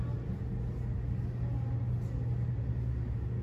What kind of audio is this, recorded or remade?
recorded